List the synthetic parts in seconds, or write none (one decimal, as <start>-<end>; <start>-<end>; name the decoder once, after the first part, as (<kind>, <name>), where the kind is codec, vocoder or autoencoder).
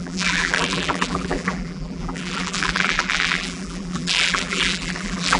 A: 0.0-5.4 (vocoder, BigVGAN v2)